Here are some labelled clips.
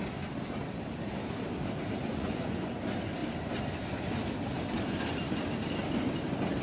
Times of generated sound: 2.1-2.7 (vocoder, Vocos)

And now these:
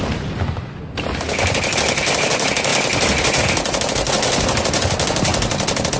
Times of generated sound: none

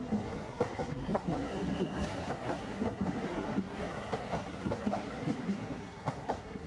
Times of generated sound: 0.0-6.7 (codec, SNAC)

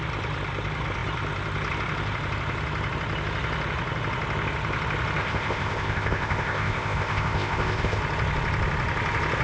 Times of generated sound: 5.2-8.0 (codec, ZipCodec)

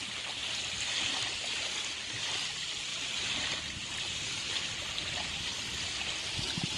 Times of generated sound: none

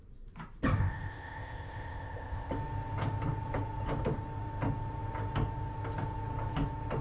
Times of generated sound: 0.8-2.5 (codec, ZipCodec)

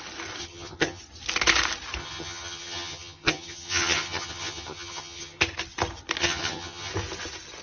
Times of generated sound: 0.4-1.0 (vocoder, HiFi-GAN); 2.0-5.4; 6.2-6.9